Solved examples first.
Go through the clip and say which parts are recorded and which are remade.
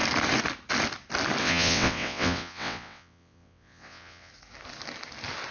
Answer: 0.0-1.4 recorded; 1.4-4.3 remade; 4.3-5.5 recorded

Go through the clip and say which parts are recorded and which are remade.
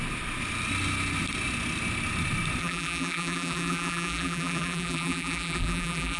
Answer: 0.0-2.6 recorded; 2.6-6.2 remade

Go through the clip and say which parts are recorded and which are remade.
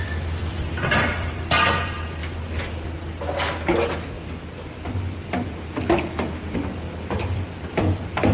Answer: 0.0-2.2 remade; 2.2-7.2 recorded; 7.2-8.3 remade